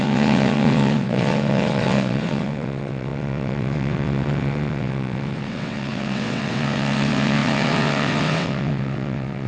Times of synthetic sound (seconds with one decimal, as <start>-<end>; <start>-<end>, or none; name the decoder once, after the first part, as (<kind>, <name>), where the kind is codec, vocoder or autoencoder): 0.0-9.5 (vocoder, WaveNeXt)